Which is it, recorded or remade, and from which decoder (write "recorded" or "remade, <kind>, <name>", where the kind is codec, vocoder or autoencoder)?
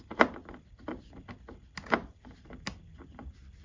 recorded